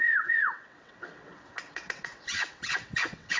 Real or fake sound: fake